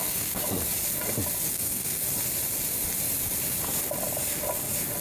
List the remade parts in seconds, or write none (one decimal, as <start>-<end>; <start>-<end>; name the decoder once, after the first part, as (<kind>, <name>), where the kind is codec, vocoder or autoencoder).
0.0-0.4 (codec, SNAC); 1.5-2.0